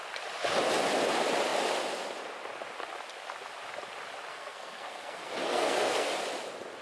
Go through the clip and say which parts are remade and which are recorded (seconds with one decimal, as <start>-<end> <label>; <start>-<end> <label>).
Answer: 0.0-4.3 recorded; 4.3-6.1 remade; 6.1-6.8 recorded